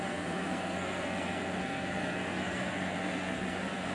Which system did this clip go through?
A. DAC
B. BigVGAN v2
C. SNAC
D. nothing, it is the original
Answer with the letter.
C